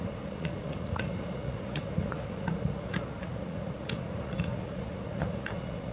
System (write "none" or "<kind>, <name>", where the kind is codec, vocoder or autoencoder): vocoder, Vocos